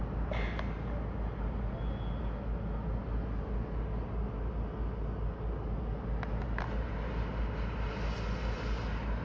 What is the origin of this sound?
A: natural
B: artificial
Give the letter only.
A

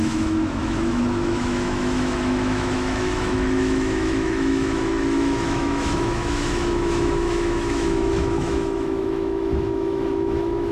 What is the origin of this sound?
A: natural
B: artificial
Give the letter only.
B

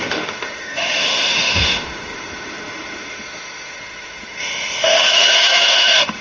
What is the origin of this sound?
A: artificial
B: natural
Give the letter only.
A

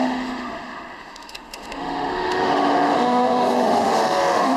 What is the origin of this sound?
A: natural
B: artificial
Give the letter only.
B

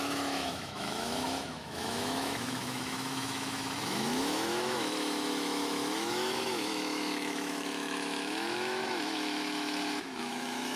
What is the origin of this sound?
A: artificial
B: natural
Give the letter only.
A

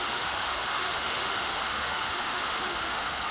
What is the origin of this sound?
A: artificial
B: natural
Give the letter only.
A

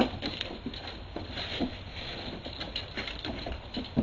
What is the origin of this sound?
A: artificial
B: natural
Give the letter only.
B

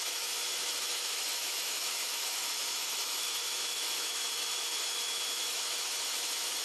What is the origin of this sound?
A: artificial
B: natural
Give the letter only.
A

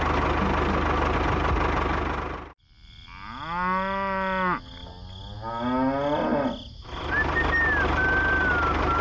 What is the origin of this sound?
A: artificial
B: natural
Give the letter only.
B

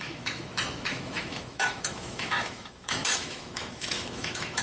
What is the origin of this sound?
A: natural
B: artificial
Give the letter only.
B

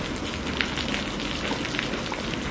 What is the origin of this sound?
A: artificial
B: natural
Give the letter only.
B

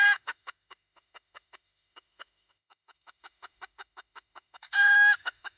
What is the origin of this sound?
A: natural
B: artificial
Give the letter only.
B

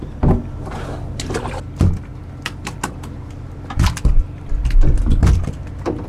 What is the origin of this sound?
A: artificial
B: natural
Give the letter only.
B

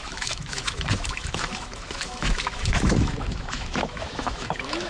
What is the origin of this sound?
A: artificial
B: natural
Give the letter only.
A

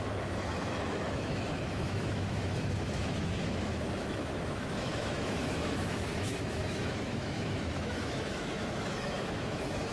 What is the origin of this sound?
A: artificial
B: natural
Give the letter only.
A